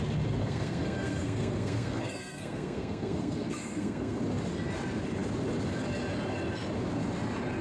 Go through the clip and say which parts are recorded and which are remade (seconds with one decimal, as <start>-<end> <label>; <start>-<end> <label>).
0.0-0.4 recorded; 0.4-4.2 remade; 4.2-7.6 recorded